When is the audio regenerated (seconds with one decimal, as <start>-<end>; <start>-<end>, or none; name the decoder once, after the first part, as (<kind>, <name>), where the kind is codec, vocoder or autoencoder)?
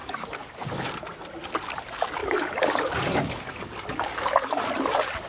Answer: 0.0-0.9 (codec, DAC); 2.2-4.7